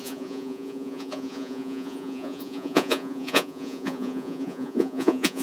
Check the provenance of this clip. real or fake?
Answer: fake